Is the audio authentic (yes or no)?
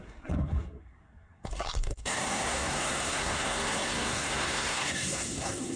no